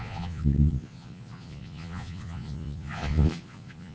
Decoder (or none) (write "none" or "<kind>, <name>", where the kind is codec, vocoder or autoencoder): vocoder, Vocos